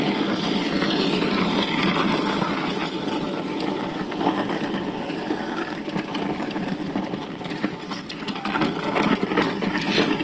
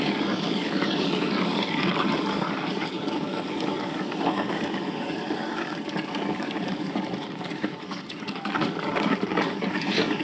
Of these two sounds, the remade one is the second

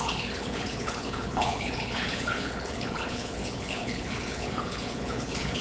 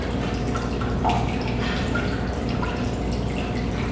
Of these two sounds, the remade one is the first